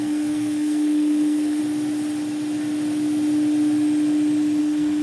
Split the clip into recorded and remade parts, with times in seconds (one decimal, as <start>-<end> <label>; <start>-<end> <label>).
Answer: 0.0-1.6 remade; 1.6-4.6 recorded; 4.6-5.0 remade